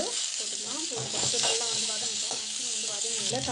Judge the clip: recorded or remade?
remade